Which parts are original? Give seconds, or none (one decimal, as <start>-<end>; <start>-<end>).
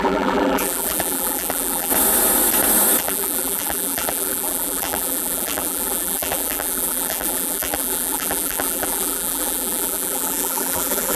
1.9-3.0